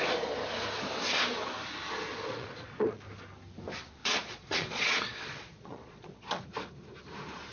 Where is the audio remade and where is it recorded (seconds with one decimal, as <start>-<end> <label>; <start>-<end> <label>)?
0.0-2.1 recorded; 2.1-3.0 remade; 3.0-4.0 recorded; 4.0-6.4 remade; 6.4-7.5 recorded